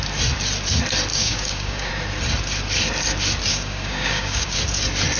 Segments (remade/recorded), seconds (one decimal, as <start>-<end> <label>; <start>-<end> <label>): 0.0-1.1 recorded; 1.1-1.9 remade; 1.9-3.5 recorded; 3.5-4.6 remade; 4.6-5.2 recorded